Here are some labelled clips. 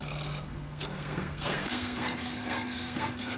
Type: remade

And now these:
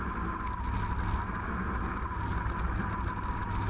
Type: recorded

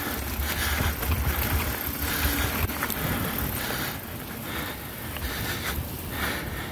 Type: recorded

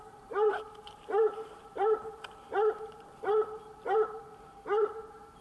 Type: remade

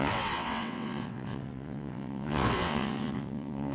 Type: remade